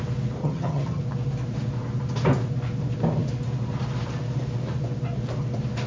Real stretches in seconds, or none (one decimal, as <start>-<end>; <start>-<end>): 0.0-0.4; 1.0-5.9